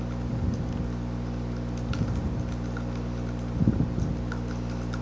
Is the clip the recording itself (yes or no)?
yes